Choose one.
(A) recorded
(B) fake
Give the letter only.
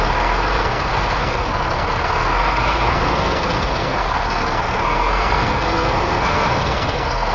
B